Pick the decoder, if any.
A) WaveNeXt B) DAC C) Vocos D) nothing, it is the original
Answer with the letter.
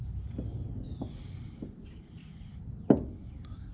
D